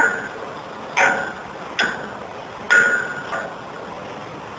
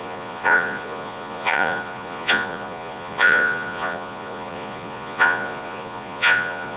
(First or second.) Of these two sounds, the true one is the first